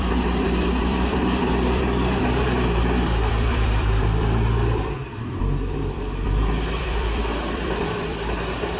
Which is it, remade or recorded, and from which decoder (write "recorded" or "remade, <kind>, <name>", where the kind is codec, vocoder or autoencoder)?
remade, vocoder, BigVGAN v2